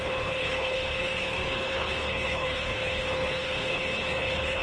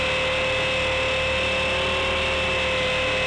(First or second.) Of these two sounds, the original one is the second